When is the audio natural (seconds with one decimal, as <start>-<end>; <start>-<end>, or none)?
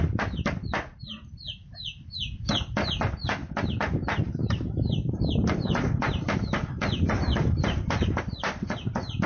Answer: 0.6-3.0; 3.4-4.3